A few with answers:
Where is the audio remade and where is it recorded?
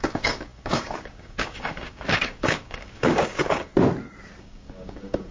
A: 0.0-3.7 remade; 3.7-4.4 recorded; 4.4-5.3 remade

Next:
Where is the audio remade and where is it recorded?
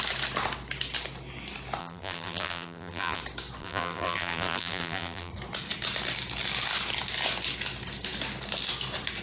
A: 0.0-1.8 recorded; 1.8-3.2 remade; 3.2-3.6 recorded; 3.6-5.3 remade; 5.3-9.2 recorded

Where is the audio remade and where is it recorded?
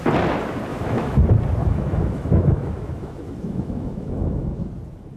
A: 0.0-0.7 recorded; 0.7-1.2 remade; 1.2-1.6 recorded; 1.6-4.7 remade; 4.7-5.2 recorded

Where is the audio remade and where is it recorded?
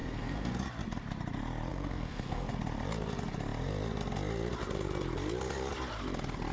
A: 0.0-0.6 remade; 0.6-1.7 recorded; 1.7-2.5 remade; 2.5-6.5 recorded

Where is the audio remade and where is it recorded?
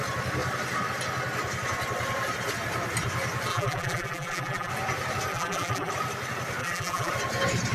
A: 0.0-3.5 recorded; 3.5-4.7 remade; 4.7-5.3 recorded; 5.3-5.9 remade; 5.9-6.6 recorded; 6.6-7.1 remade; 7.1-7.7 recorded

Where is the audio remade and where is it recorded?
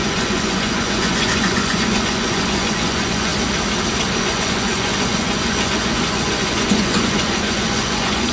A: 0.0-3.3 remade; 3.3-4.2 recorded; 4.2-8.3 remade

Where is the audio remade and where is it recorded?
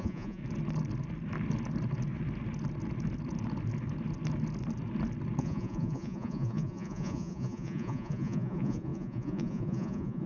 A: 0.0-0.4 remade; 0.4-5.4 recorded; 5.4-10.3 remade